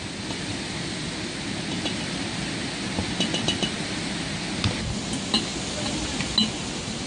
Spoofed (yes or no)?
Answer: no